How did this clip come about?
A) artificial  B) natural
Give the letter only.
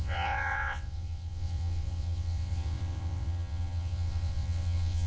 A